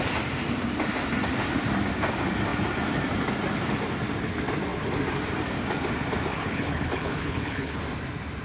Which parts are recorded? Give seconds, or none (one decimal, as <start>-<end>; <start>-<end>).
0.0-6.3; 7.8-8.4